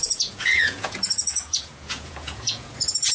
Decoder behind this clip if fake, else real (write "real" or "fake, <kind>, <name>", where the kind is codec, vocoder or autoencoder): fake, vocoder, Vocos